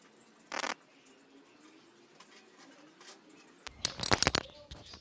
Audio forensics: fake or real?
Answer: real